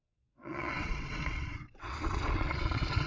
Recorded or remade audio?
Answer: remade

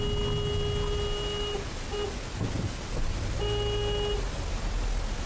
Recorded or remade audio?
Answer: recorded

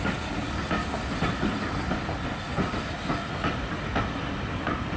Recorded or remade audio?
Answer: recorded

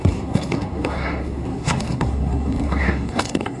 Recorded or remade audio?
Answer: remade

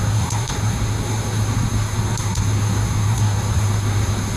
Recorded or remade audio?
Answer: remade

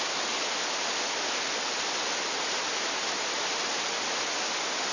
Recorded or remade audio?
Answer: recorded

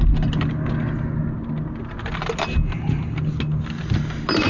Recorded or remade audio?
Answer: recorded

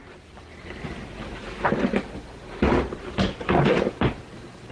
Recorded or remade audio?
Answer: recorded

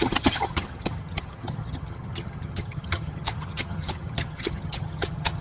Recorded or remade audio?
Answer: remade